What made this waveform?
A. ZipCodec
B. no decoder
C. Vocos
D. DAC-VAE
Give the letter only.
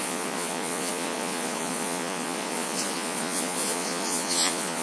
C